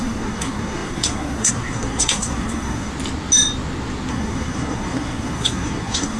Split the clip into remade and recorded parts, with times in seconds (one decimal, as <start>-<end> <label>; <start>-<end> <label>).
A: 0.0-2.9 remade; 2.9-4.1 recorded; 4.1-6.2 remade